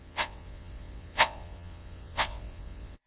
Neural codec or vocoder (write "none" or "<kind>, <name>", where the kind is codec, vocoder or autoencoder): vocoder, WaveNeXt